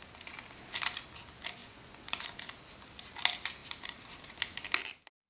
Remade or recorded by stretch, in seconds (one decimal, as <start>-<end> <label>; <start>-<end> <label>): 0.0-1.6 recorded; 1.6-2.2 remade; 2.2-5.3 recorded

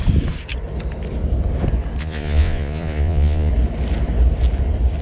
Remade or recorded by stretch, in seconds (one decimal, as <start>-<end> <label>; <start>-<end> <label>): 0.0-2.0 recorded; 2.0-3.5 remade; 3.5-5.0 recorded

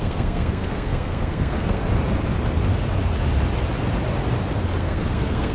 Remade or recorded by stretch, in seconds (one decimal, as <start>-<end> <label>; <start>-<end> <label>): 0.0-1.8 remade; 1.8-4.8 recorded; 4.8-5.5 remade

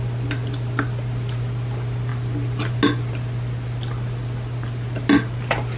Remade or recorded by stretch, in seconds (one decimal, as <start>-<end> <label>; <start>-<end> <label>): 0.0-5.8 recorded

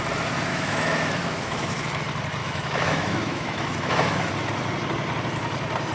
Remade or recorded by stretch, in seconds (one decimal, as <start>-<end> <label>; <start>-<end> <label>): 0.0-0.5 recorded; 0.5-2.0 remade; 2.0-2.4 recorded; 2.4-4.3 remade; 4.3-5.9 recorded

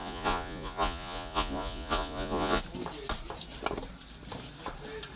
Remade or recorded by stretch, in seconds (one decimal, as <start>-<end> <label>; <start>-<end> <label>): 0.0-2.6 remade; 2.6-5.2 recorded

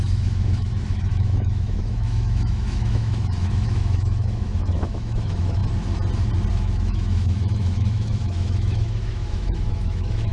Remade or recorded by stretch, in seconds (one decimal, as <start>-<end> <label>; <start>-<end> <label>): 0.0-5.6 remade; 5.6-6.5 recorded; 6.5-10.3 remade

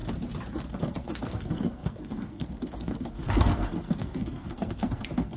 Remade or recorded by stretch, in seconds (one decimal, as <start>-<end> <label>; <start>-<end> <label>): 0.0-0.7 recorded; 0.7-5.4 remade